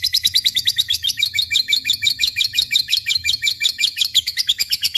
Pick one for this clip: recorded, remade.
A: remade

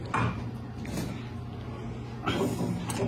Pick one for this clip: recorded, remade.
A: recorded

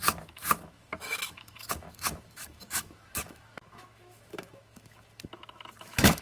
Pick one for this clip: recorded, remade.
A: remade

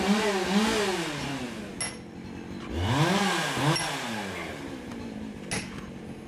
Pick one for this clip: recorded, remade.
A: recorded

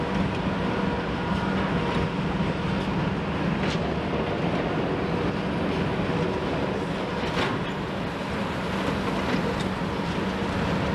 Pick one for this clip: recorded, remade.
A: recorded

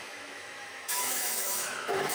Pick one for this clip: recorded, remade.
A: remade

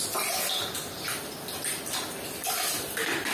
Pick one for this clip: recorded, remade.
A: recorded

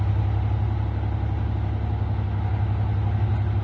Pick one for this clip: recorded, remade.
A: recorded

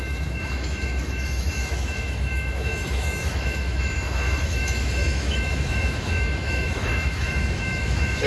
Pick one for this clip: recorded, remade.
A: remade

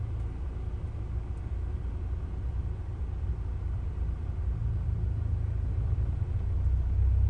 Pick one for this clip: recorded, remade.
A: recorded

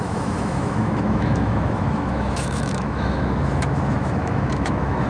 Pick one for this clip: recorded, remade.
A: remade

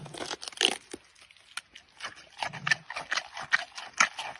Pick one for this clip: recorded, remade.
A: recorded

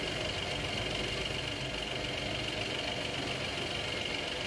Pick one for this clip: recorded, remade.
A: recorded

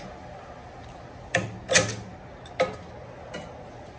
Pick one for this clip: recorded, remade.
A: recorded